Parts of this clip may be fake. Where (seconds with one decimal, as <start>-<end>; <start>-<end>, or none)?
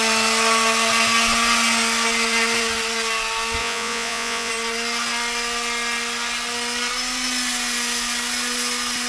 3.6-4.5